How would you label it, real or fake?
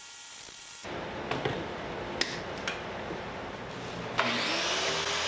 real